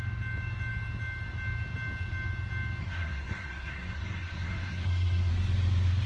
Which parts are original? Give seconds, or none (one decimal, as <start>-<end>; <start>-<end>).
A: 0.0-2.8; 5.3-6.1